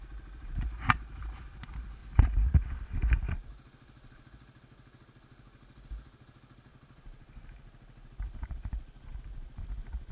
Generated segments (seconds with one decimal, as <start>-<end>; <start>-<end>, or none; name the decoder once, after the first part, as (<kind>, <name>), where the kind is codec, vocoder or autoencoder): 2.0-3.1 (vocoder, BigVGAN v2); 6.7-10.1